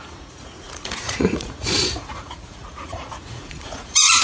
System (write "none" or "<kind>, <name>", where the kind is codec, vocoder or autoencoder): vocoder, Vocos